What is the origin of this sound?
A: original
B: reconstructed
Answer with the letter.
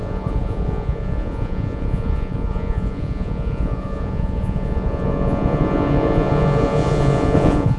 B